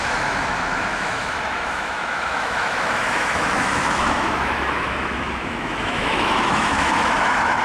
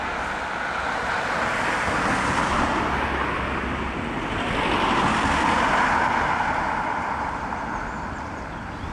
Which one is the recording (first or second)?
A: second